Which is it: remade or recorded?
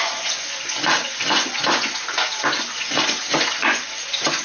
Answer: remade